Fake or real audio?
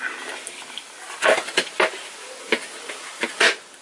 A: real